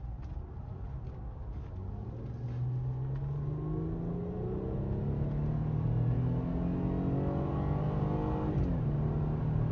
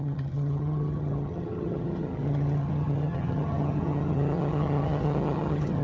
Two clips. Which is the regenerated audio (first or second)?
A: second